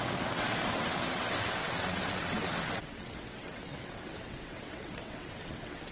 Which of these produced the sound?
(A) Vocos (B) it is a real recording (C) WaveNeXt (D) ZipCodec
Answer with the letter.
C